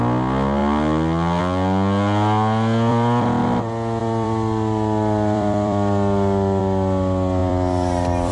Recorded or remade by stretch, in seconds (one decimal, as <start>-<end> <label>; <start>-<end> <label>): 0.0-2.9 recorded; 2.9-3.4 remade; 3.4-4.0 recorded; 4.0-6.6 remade; 6.6-7.4 recorded; 7.4-8.3 remade